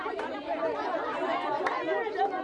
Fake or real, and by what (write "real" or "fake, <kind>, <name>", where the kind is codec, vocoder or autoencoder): real